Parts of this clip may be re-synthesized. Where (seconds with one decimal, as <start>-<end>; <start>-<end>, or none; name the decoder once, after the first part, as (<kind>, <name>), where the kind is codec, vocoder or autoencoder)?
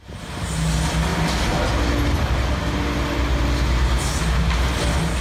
none